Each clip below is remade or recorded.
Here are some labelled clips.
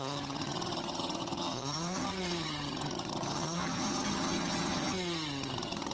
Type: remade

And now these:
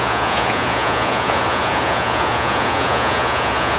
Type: remade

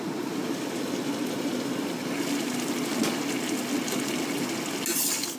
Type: recorded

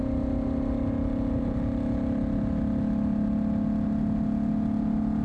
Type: recorded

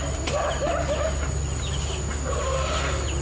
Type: recorded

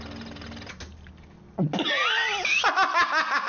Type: recorded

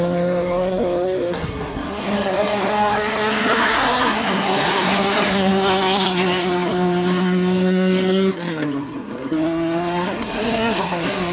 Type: remade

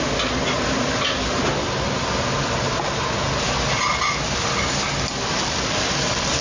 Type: recorded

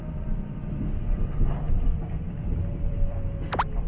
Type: remade